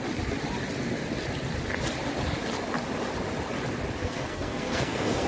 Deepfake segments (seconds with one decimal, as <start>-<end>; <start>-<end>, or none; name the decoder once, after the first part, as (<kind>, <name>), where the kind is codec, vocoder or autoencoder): 4.0-5.3 (codec, SNAC)